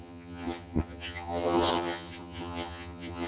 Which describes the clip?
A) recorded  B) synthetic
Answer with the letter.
B